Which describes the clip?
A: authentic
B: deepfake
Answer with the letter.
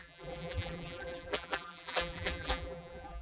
B